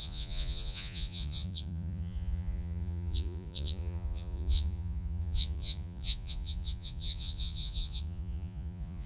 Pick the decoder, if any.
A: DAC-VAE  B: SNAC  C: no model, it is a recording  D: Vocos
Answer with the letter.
D